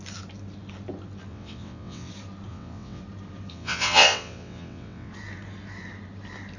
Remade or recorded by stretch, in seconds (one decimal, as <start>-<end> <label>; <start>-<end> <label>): 0.0-1.3 recorded; 1.3-2.1 remade; 2.1-2.5 recorded; 2.5-3.0 remade; 3.0-3.5 recorded; 3.5-5.1 remade; 5.1-6.6 recorded